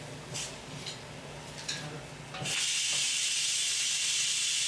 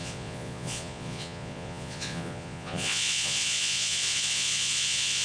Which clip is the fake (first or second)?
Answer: second